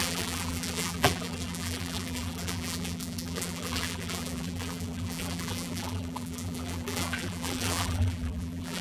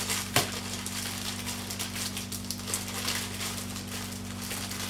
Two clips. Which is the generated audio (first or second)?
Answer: first